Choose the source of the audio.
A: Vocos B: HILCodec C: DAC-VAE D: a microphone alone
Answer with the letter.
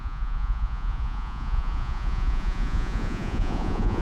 A